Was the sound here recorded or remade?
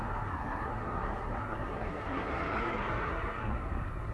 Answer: remade